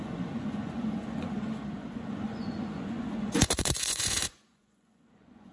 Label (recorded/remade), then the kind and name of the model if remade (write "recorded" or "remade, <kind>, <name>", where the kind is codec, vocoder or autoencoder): remade, vocoder, Vocos